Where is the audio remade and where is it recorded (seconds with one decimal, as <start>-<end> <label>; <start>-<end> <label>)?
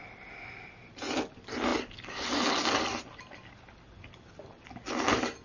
0.0-5.4 recorded